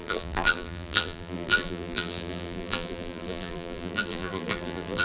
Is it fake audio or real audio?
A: fake